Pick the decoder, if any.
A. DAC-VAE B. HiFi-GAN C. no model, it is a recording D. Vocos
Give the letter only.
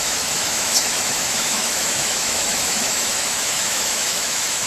A